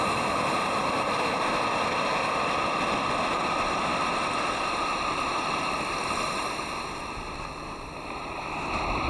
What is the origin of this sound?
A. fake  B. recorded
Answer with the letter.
B